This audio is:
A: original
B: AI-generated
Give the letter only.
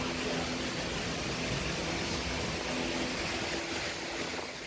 A